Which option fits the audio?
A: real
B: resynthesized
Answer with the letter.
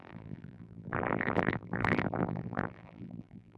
B